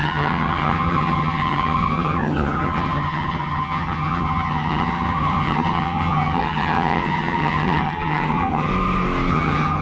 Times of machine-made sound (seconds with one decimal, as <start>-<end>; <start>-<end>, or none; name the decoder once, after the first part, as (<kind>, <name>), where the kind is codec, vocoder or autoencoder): 0.0-8.7 (vocoder, HiFi-GAN); 9.3-9.8